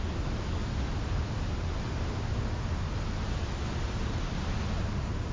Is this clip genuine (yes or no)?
yes